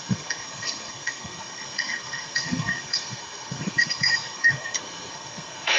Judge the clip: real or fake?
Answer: fake